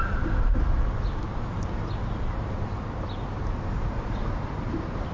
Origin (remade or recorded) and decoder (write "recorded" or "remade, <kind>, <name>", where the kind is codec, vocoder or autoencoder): recorded